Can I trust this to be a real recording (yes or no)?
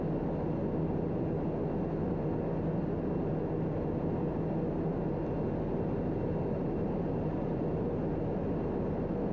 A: yes